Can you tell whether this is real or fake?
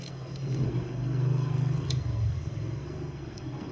fake